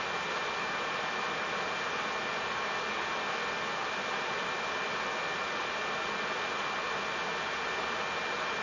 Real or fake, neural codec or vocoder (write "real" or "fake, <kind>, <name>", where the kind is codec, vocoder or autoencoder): real